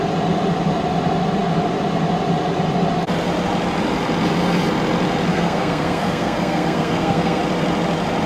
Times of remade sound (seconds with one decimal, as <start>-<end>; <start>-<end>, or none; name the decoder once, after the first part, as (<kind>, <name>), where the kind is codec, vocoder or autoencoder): 5.3-7.4 (codec, SNAC)